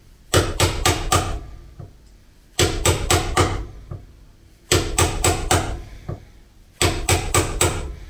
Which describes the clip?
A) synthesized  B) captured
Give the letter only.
A